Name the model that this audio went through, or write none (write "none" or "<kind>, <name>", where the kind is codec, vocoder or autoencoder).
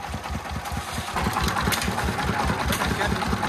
none